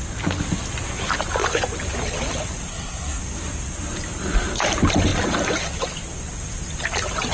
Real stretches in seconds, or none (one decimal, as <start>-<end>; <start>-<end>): 0.0-2.7; 3.2-7.3